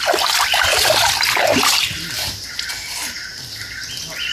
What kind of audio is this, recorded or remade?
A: recorded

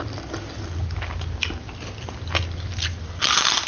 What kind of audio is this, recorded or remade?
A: recorded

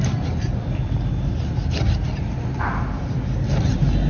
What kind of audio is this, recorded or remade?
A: recorded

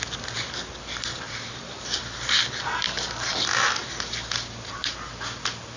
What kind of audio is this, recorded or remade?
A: recorded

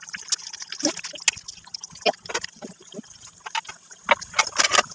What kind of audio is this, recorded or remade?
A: recorded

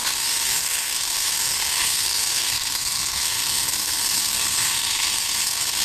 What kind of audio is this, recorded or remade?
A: remade